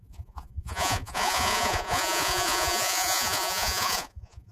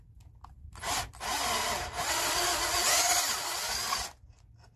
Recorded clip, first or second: second